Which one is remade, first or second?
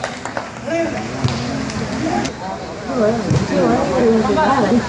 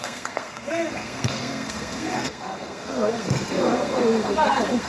second